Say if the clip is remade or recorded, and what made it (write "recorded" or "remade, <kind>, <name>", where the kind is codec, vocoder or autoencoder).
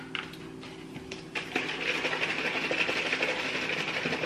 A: recorded